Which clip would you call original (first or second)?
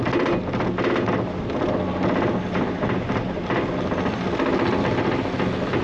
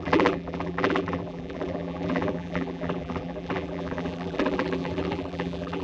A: first